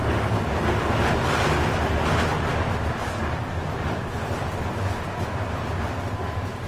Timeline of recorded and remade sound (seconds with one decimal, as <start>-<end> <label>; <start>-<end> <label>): 0.0-6.7 recorded

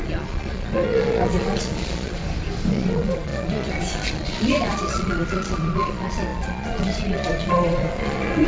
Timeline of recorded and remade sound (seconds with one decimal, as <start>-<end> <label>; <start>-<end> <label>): 0.0-2.2 remade; 2.2-2.7 recorded; 2.7-8.5 remade

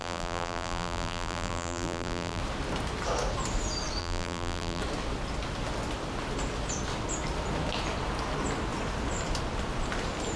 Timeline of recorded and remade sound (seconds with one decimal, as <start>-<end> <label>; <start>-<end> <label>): 0.0-2.4 remade; 2.4-4.0 recorded; 4.0-4.8 remade; 4.8-10.4 recorded

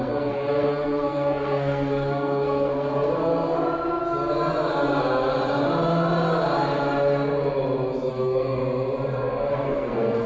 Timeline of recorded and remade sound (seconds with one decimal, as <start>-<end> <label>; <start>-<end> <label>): 0.0-3.3 remade; 3.3-8.1 recorded; 8.1-8.6 remade; 8.6-9.5 recorded; 9.5-10.3 remade

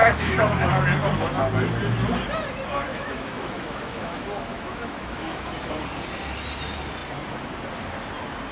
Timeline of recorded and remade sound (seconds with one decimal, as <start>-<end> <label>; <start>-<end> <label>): 0.0-0.7 remade; 0.7-2.9 recorded; 2.9-5.7 remade; 5.7-8.5 recorded

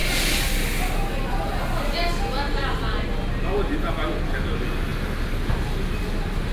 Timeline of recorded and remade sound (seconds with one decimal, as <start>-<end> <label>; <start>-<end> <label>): 0.0-6.5 recorded

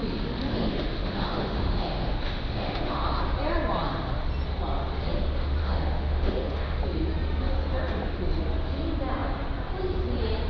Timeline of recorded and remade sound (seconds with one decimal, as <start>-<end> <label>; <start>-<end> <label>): 0.0-0.5 recorded; 0.5-3.2 remade; 3.2-5.6 recorded; 5.6-6.8 remade; 6.8-10.5 recorded